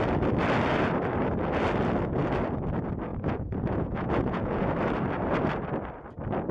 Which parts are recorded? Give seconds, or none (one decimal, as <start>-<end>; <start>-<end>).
0.0-3.1; 4.6-6.5